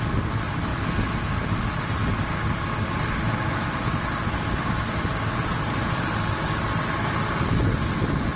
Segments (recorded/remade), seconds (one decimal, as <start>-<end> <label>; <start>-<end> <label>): 0.0-8.4 recorded